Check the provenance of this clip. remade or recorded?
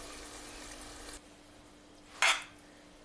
recorded